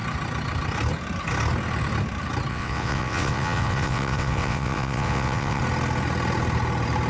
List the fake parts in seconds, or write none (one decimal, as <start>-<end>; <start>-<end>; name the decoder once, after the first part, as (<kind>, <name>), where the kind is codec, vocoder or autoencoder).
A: 2.5-5.6 (vocoder, WaveNeXt)